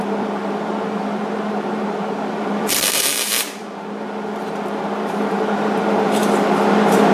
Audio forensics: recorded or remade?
remade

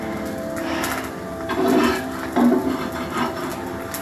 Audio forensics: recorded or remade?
recorded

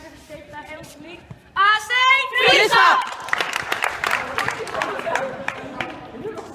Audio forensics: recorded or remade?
remade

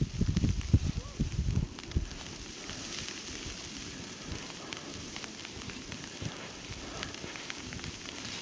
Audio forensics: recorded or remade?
remade